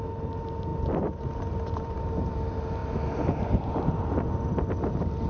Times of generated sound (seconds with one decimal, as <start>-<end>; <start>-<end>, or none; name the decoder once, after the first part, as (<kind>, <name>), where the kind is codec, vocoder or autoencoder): none